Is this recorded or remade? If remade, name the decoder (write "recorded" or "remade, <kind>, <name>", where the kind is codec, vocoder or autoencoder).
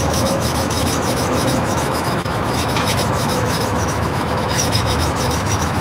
remade, autoencoder, DAC-VAE